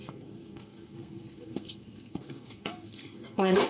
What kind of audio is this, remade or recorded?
remade